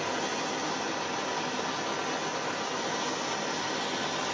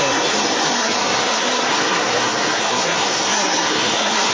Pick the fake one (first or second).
second